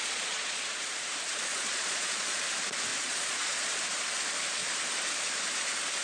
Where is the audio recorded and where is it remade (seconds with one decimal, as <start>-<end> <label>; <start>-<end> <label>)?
0.0-1.0 remade; 1.0-1.5 recorded; 1.5-2.4 remade; 2.4-2.9 recorded; 2.9-3.7 remade; 3.7-6.0 recorded